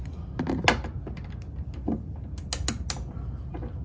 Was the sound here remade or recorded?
recorded